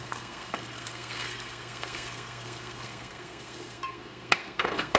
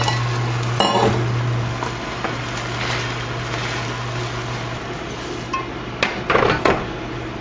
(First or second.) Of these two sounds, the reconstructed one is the first